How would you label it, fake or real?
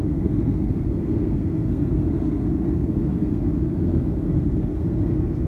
fake